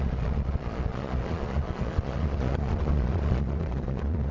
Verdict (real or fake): fake